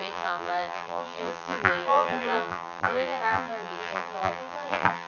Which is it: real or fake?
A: fake